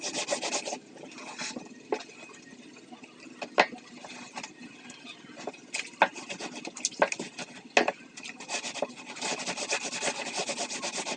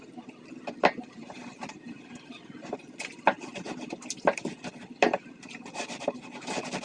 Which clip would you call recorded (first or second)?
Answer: first